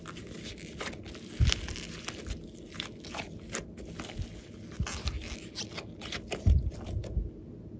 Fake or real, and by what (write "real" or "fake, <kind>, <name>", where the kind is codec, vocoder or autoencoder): real